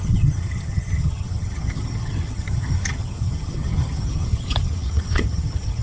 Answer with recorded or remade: remade